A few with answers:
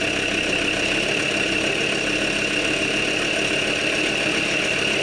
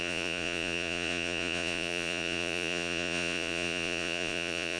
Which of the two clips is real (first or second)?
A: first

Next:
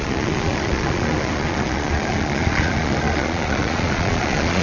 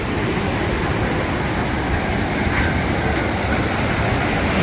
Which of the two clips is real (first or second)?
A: second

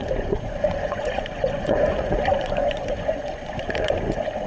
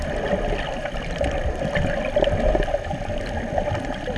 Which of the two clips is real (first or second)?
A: second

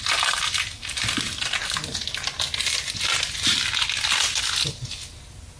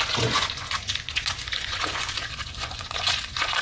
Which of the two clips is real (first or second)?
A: first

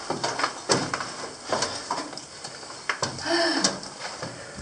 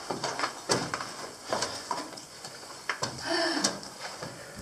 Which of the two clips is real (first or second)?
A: first